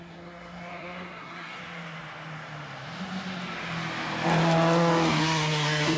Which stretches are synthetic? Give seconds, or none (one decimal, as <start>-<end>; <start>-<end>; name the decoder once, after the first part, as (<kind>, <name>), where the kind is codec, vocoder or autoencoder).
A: 0.0-1.6 (codec, SNAC); 5.2-6.0